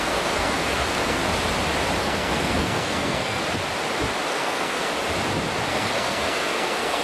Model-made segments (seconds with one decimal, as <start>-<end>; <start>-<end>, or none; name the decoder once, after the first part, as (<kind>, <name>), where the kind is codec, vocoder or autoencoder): 0.0-1.2 (codec, SNAC); 2.0-3.4; 4.3-4.9; 5.7-7.0